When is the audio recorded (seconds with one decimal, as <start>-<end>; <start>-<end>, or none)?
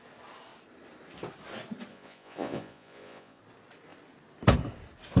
0.0-1.9; 3.4-5.2